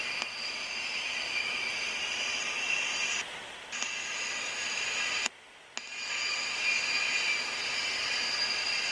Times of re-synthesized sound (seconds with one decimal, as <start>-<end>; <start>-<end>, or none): none